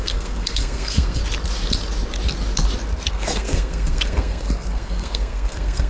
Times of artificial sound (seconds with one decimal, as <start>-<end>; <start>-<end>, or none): 0.0-1.2; 3.1-5.9